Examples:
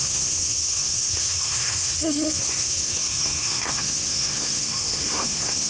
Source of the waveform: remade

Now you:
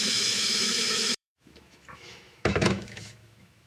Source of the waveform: remade